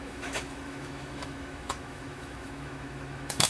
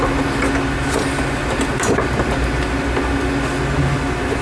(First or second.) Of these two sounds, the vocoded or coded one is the first